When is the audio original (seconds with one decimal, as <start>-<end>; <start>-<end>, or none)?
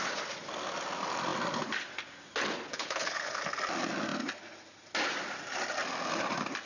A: 0.0-2.7; 3.4-6.7